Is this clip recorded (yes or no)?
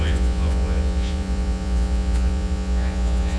no